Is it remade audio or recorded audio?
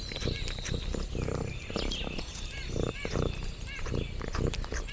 recorded